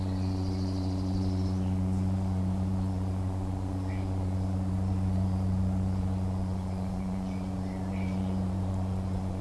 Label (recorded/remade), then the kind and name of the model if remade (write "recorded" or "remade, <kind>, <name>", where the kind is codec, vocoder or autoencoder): remade, vocoder, Vocos